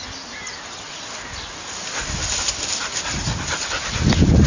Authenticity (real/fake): real